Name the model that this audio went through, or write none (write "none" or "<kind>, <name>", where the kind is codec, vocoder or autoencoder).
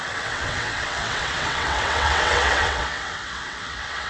vocoder, WaveNeXt